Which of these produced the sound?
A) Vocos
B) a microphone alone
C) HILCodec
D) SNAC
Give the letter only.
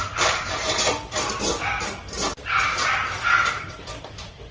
B